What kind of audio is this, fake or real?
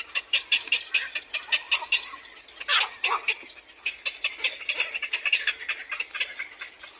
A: real